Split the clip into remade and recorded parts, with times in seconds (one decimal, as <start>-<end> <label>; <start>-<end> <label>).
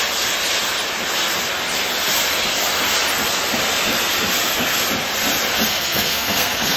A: 0.0-5.7 recorded; 5.7-6.8 remade